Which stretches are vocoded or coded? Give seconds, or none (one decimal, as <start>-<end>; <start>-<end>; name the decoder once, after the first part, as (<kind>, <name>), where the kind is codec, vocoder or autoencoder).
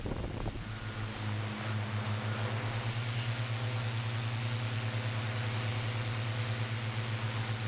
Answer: none